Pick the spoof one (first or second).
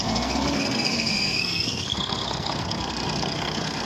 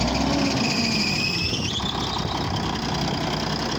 first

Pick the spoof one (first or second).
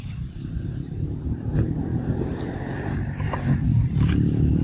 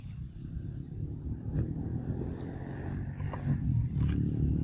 first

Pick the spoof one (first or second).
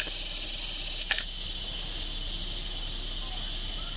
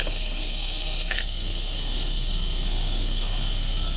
second